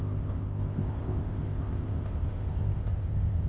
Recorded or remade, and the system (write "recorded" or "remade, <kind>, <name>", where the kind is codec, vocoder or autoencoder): remade, codec, ZipCodec